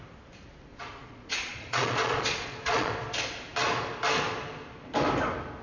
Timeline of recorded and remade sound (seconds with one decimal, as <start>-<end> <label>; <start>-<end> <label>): 0.0-0.7 recorded; 0.7-2.9 remade; 2.9-5.6 recorded